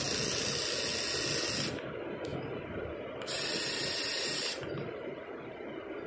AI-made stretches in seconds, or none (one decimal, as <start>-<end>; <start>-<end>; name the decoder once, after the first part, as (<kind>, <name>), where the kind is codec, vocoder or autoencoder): 2.3-6.1 (vocoder, BigVGAN v2)